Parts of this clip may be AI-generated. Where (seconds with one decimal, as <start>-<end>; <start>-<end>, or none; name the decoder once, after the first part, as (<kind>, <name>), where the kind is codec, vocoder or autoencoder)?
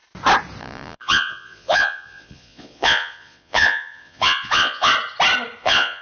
0.6-4.9 (vocoder, Vocos); 5.6-6.0